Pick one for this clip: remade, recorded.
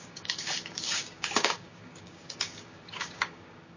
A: remade